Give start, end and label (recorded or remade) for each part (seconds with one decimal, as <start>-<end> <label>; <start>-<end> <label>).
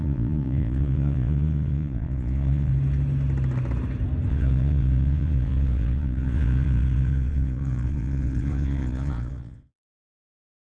0.0-2.7 remade; 2.7-4.3 recorded; 4.3-10.8 remade